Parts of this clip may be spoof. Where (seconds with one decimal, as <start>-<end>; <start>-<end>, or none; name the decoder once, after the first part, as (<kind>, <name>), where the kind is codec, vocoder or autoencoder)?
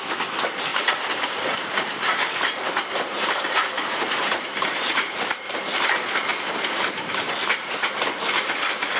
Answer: 0.7-5.6 (vocoder, BigVGAN v2)